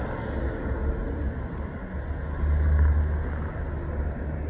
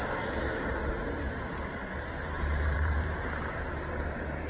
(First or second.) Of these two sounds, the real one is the first